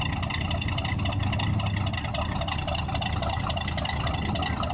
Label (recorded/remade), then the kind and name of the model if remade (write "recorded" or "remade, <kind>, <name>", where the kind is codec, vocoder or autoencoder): recorded